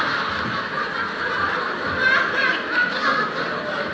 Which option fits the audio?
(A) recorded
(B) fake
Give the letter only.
A